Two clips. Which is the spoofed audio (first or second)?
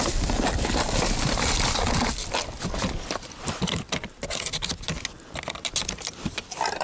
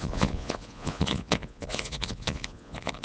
second